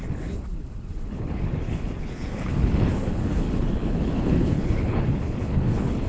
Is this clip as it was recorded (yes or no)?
no